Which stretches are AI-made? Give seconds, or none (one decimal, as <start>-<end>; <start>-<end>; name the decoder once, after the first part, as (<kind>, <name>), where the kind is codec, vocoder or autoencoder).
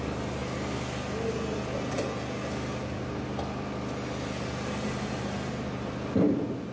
none